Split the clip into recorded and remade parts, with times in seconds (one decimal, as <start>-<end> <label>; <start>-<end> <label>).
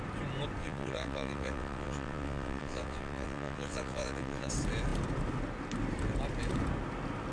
0.0-0.6 recorded; 0.6-4.5 remade; 4.5-7.3 recorded